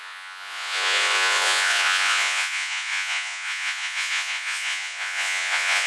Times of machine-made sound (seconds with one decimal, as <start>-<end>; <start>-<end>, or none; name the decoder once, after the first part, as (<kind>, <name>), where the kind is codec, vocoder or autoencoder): 0.0-5.9 (vocoder, Vocos)